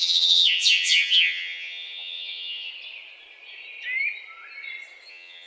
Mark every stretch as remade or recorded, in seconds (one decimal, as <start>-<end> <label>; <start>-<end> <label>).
0.0-2.7 remade; 2.7-5.1 recorded; 5.1-5.5 remade